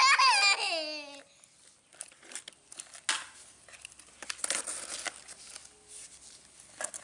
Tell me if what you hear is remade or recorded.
recorded